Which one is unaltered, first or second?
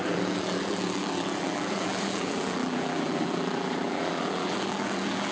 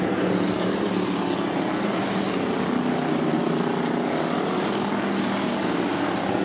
second